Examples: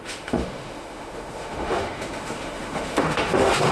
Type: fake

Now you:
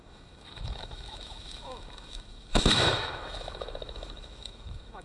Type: fake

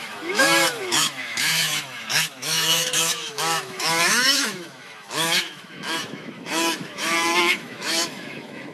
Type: fake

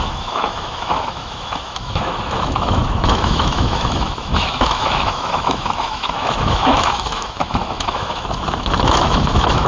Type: fake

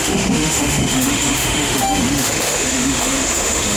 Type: fake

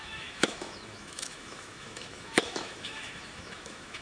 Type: fake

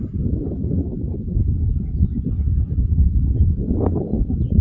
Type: real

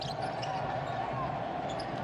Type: real